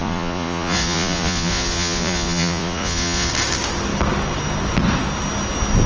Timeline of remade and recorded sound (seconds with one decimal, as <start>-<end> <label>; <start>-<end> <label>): 0.0-3.3 remade; 3.3-5.9 recorded